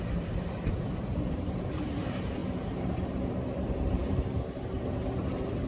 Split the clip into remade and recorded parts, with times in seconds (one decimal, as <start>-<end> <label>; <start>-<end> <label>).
0.0-5.7 remade